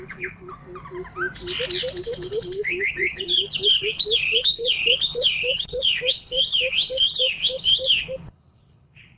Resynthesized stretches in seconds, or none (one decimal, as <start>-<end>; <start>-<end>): 0.0-0.6; 2.0-9.2